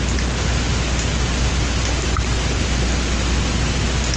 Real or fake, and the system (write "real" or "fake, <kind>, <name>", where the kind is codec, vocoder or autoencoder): real